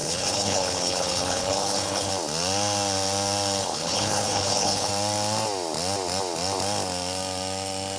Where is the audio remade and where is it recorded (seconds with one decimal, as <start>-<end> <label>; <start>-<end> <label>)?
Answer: 0.0-2.1 remade; 2.1-3.6 recorded; 3.6-4.9 remade; 4.9-8.0 recorded